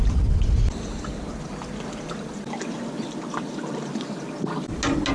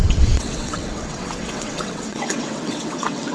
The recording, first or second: first